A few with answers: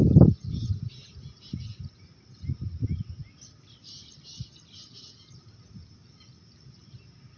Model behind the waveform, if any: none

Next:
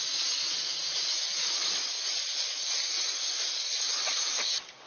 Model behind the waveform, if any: none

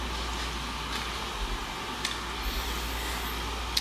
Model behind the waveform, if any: none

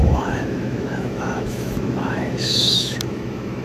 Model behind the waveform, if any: autoencoder, DAC-VAE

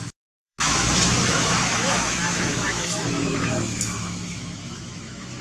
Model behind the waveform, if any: autoencoder, DAC-VAE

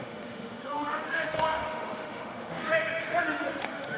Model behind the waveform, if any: autoencoder, DAC-VAE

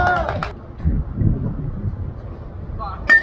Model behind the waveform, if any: none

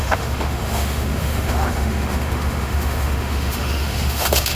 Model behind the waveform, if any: autoencoder, DAC-VAE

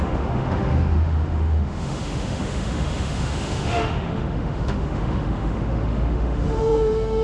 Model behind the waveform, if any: autoencoder, DAC-VAE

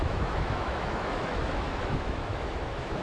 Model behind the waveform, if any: autoencoder, DAC-VAE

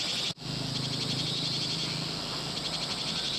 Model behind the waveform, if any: none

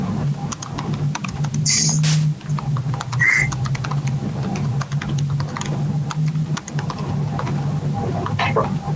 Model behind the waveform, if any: none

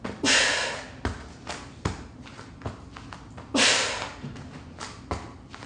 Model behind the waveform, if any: none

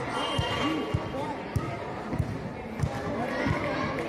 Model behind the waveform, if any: none